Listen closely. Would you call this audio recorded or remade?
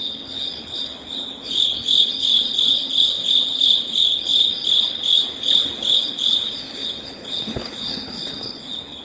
remade